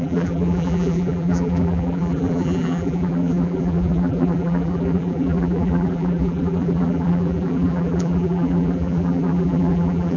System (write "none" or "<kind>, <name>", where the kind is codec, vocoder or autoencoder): vocoder, BigVGAN v2